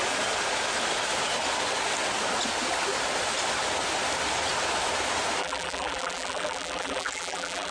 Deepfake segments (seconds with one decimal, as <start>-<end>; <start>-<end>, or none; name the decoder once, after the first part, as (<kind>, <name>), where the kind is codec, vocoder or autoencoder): 5.4-7.7 (vocoder, BigVGAN v2)